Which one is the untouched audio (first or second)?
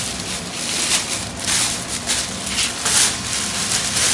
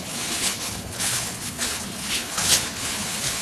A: first